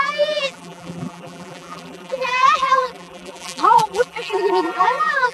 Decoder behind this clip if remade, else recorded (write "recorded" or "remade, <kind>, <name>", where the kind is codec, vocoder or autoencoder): remade, vocoder, BigVGAN v2